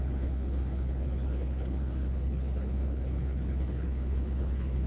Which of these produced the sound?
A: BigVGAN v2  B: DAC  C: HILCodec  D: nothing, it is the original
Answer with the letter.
C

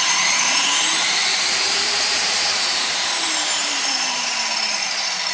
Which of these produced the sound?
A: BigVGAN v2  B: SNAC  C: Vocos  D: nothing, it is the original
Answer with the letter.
A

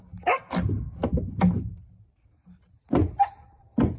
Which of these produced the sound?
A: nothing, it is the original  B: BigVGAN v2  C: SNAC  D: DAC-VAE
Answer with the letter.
A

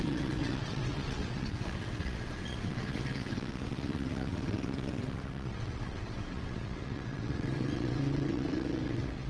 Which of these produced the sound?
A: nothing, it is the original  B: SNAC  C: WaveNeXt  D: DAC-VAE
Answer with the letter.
C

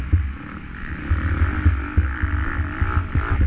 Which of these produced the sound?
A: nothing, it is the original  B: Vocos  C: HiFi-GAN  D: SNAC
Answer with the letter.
A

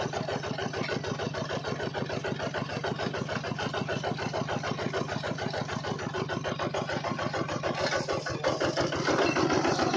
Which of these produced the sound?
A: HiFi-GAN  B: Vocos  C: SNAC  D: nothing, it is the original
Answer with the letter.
D